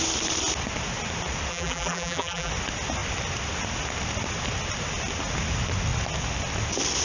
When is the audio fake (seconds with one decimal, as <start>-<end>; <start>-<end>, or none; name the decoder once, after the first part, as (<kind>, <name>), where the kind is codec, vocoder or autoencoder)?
1.5-2.5 (vocoder, BigVGAN v2)